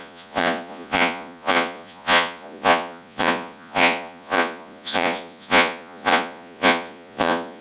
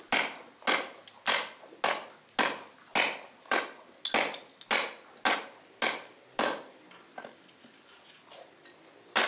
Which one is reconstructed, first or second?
first